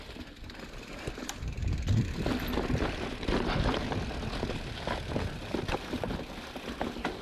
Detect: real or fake fake